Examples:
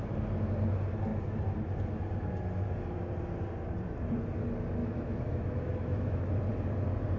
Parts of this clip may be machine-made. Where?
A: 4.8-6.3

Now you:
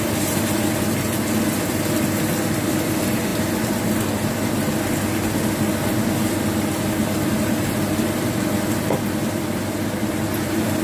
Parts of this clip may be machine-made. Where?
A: none